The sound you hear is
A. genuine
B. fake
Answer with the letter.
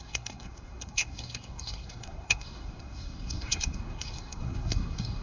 B